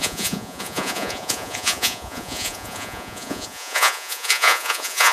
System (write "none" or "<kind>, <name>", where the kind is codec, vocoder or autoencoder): vocoder, Vocos